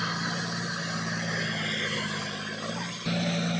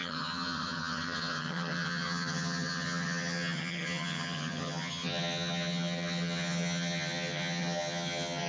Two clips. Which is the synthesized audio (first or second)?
second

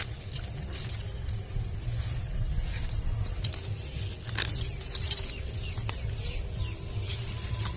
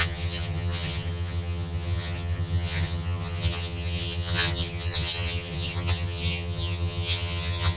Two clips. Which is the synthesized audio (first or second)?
second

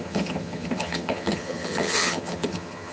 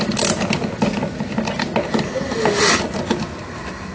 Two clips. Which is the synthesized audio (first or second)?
first